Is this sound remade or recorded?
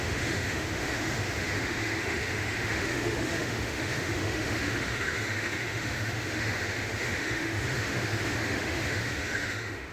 remade